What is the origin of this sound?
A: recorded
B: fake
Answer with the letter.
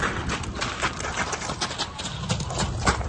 A